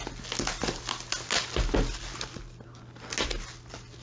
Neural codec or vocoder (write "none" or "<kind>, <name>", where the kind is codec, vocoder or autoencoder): none